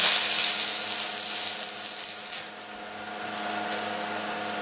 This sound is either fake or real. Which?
real